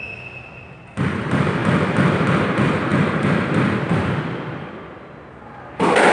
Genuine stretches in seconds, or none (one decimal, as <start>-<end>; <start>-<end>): 0.0-2.9; 4.7-6.1